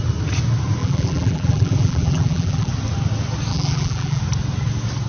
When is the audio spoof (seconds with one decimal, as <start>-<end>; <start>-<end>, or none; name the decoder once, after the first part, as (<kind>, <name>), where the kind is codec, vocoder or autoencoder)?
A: 0.8-2.7 (vocoder, BigVGAN v2); 3.5-4.2